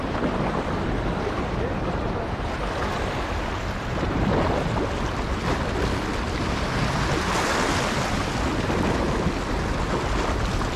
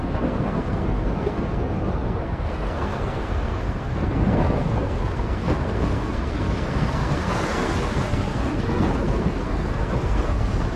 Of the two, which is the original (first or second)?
first